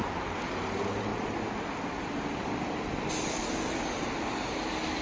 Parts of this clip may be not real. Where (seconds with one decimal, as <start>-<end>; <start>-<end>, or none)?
none